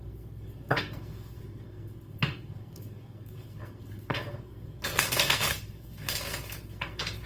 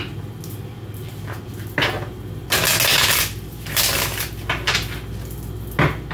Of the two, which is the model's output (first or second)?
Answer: first